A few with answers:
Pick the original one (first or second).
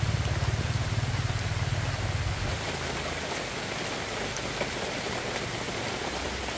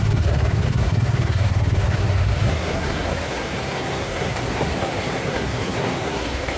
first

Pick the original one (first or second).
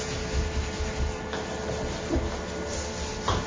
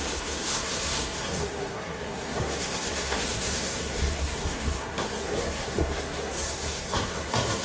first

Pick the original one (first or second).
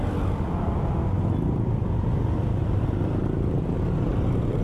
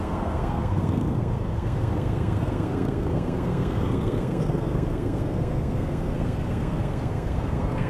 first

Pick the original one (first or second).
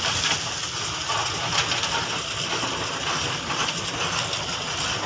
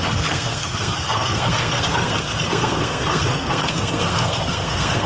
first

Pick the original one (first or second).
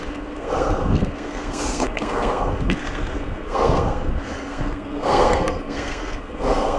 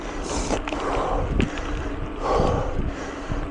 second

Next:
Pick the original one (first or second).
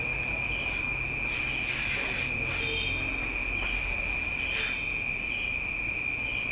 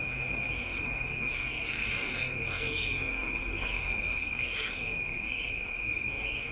first